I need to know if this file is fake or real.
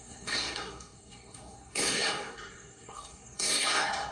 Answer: fake